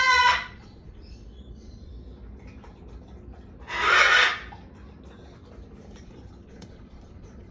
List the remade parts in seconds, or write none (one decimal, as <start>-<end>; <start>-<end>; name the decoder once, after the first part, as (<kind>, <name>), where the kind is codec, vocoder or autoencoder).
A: 0.0-1.9 (vocoder, Vocos); 6.0-7.5